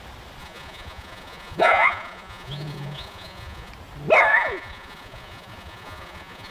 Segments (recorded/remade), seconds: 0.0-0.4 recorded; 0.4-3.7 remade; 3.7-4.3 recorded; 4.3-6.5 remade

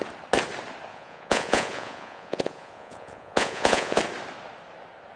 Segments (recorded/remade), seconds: 0.0-0.9 recorded; 0.9-4.0 remade; 4.0-5.2 recorded

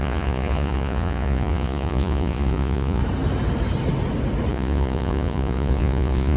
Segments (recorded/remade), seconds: 0.0-3.0 remade; 3.0-4.5 recorded; 4.5-6.4 remade

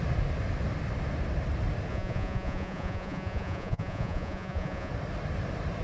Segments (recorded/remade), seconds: 0.0-1.9 recorded; 1.9-4.9 remade; 4.9-5.8 recorded

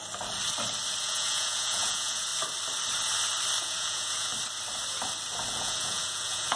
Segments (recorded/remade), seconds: 0.0-1.0 recorded; 1.0-2.3 remade; 2.3-3.6 recorded; 3.6-4.3 remade; 4.3-5.5 recorded; 5.5-6.6 remade

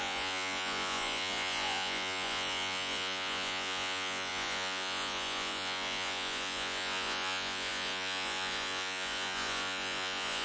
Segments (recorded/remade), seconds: 0.0-10.4 remade

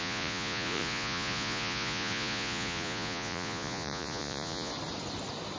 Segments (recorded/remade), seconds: 0.0-4.7 remade; 4.7-5.6 recorded